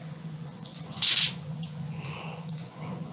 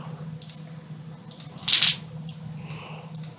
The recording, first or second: second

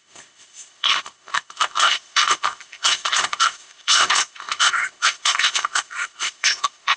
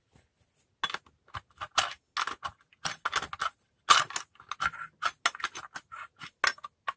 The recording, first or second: second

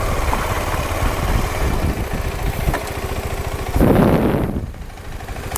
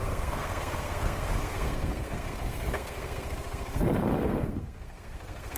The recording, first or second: first